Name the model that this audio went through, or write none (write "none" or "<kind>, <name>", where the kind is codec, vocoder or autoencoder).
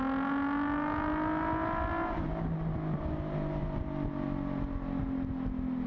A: none